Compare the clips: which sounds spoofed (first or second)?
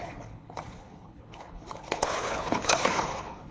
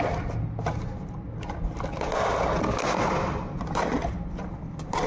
first